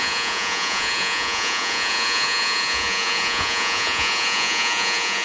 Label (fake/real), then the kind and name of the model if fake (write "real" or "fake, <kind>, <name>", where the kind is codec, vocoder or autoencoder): fake, vocoder, Vocos